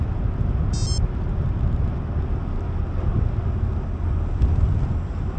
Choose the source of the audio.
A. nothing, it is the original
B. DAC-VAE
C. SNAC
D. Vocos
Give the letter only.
A